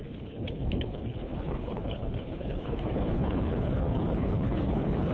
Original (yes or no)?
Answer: no